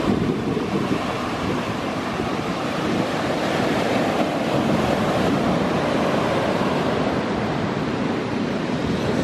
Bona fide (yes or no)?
no